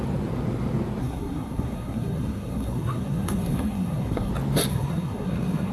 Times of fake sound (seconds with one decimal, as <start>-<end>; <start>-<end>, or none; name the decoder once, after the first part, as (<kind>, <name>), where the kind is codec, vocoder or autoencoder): 1.0-4.3 (codec, SNAC); 4.7-5.7